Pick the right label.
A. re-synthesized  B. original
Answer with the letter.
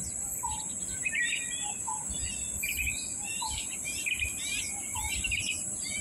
A